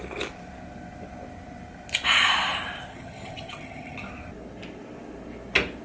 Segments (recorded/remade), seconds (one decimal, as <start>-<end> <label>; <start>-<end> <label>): 0.0-2.9 recorded; 2.9-4.1 remade; 4.1-5.8 recorded